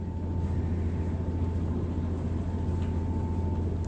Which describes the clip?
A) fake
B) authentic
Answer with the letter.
B